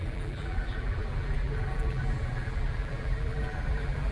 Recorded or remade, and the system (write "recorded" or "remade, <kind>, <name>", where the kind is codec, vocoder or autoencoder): remade, vocoder, BigVGAN v2